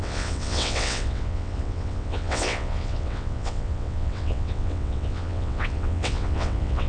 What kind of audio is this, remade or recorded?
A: remade